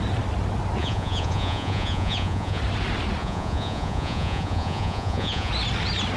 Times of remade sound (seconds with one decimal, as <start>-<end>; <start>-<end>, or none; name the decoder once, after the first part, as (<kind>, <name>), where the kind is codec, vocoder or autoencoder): 0.8-2.6 (vocoder, Vocos); 3.2-5.5